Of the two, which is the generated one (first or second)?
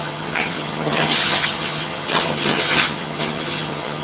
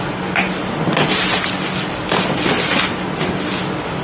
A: first